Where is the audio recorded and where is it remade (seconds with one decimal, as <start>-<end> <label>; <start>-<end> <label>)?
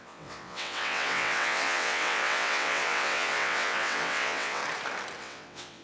0.0-4.6 remade; 4.6-5.2 recorded; 5.2-5.8 remade